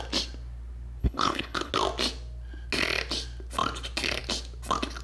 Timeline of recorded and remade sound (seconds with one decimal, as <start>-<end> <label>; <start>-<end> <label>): 0.0-1.0 recorded; 1.0-1.7 remade; 1.7-5.0 recorded